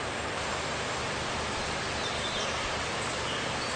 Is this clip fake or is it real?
fake